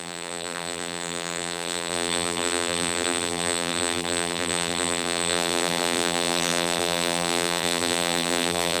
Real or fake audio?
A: fake